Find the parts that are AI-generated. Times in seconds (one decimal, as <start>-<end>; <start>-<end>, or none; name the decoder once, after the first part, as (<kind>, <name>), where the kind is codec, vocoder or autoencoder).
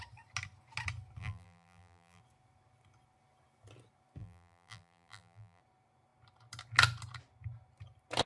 1.2-2.2 (vocoder, BigVGAN v2); 4.2-5.6